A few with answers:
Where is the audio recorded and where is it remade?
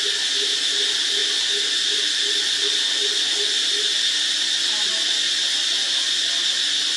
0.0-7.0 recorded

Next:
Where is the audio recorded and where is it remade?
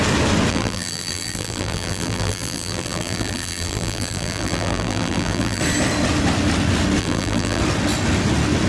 0.0-0.5 recorded; 0.5-5.6 remade; 5.6-7.0 recorded; 7.0-7.6 remade; 7.6-8.7 recorded